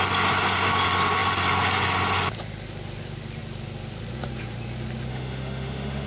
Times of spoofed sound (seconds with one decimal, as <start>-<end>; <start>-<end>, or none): 5.1-6.1